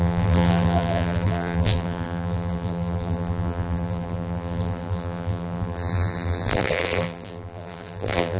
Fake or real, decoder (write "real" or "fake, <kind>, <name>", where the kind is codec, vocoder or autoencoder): fake, vocoder, BigVGAN v2